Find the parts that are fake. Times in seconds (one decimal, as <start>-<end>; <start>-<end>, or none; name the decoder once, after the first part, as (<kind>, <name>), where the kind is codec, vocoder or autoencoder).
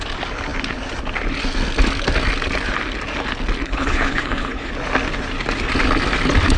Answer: 3.6-4.7 (codec, HILCodec)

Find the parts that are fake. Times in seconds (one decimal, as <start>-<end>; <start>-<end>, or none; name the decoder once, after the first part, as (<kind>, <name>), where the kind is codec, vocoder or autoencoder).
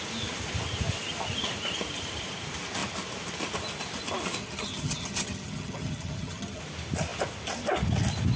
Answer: 4.4-6.6 (vocoder, HiFi-GAN)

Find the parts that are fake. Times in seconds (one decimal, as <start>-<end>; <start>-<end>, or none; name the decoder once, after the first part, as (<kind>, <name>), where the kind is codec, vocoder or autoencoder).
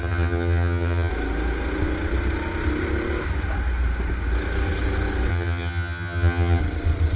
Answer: 0.0-1.1 (vocoder, HiFi-GAN); 5.3-6.6